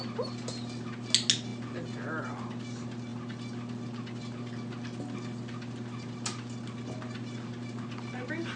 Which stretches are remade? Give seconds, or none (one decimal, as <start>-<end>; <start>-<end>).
none